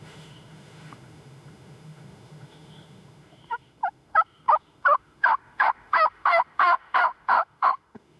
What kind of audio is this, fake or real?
fake